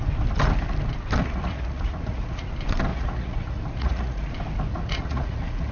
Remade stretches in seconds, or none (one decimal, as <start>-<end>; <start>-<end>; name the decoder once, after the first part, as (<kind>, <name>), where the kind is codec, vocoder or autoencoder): 1.2-2.5 (vocoder, Vocos); 2.9-4.3; 4.7-5.7